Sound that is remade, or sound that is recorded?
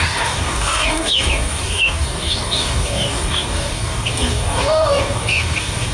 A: remade